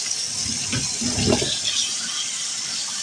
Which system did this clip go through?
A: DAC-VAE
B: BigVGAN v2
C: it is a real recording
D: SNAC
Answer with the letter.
C